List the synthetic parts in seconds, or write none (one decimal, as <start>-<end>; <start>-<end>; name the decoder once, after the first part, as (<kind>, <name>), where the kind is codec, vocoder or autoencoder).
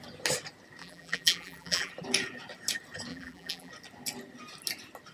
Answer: 0.8-1.9 (vocoder, BigVGAN v2); 3.1-3.7